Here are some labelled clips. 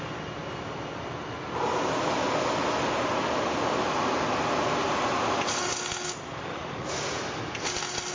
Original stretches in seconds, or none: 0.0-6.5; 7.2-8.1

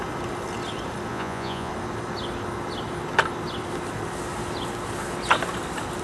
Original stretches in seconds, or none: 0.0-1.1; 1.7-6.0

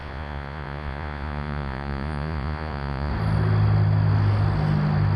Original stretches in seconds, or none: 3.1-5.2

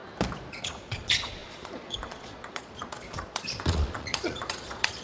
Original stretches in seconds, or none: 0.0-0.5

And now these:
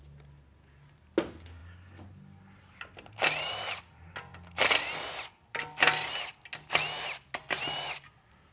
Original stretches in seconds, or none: 0.0-8.5

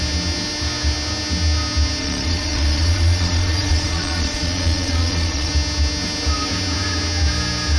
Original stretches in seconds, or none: 0.0-2.0; 5.5-7.8

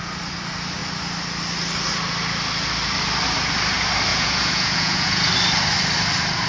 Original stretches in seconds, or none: 0.0-4.1; 5.3-6.5